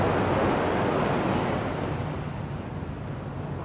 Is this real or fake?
real